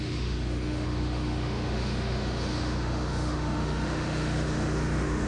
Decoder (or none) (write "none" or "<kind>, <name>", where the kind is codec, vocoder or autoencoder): autoencoder, DAC-VAE